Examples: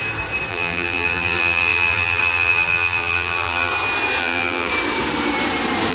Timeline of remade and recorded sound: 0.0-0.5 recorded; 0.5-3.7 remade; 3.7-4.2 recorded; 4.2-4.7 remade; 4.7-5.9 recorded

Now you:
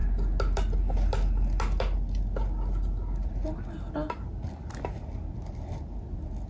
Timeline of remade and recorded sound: 0.0-6.5 recorded

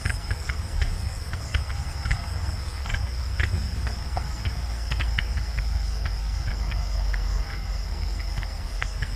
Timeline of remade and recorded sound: 0.0-9.2 remade

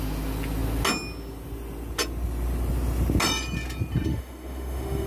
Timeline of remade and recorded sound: 0.0-4.1 recorded; 4.1-5.1 remade

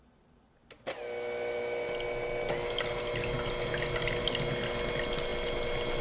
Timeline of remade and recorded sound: 0.0-6.0 recorded